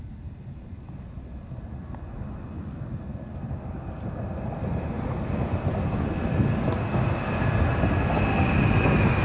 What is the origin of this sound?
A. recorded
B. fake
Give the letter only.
A